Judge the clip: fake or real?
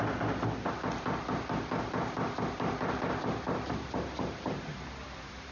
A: real